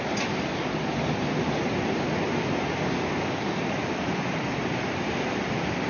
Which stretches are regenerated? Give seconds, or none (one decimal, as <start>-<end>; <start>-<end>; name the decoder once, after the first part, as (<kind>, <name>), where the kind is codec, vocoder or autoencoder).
3.8-5.4 (vocoder, BigVGAN v2)